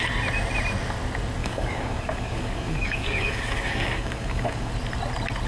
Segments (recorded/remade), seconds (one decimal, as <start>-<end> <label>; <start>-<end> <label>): 0.0-1.4 recorded; 1.4-4.7 remade; 4.7-5.5 recorded